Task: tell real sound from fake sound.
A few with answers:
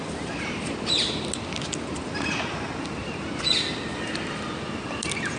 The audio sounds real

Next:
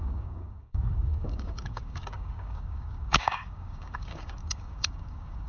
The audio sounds fake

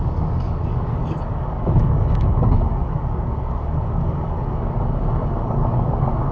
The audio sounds fake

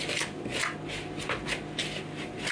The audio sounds real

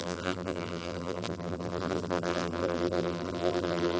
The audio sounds fake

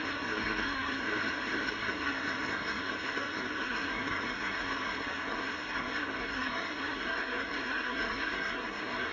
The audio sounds fake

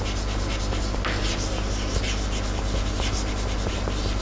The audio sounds real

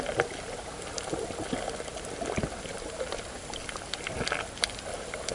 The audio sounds real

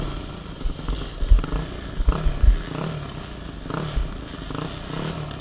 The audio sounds real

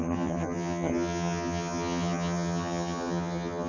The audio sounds fake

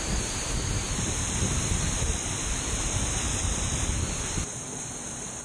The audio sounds fake